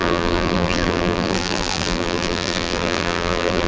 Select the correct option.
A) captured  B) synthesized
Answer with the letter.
B